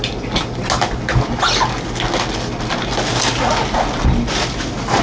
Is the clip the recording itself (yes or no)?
yes